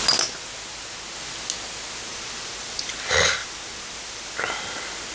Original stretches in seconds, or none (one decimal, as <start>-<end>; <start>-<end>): 0.0-2.1; 2.9-3.4; 4.3-5.1